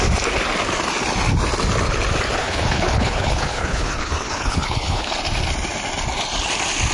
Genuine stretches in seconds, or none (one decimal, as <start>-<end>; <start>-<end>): 0.0-2.4; 5.1-6.9